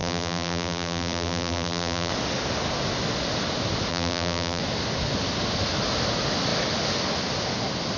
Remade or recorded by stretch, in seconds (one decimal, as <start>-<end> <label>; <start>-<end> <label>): 0.0-2.1 remade; 2.1-3.9 recorded; 3.9-4.6 remade; 4.6-8.0 recorded